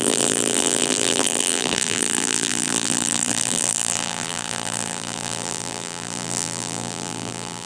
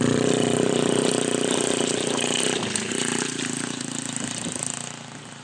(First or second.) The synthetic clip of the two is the first